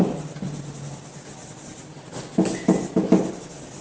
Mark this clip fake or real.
real